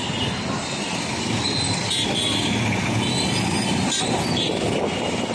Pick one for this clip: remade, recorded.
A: recorded